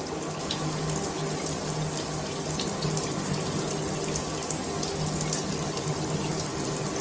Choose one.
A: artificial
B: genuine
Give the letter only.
B